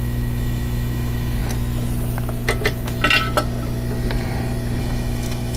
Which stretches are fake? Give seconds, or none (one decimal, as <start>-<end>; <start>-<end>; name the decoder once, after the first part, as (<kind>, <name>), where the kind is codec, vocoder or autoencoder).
0.0-1.4 (autoencoder, DAC-VAE); 4.8-5.6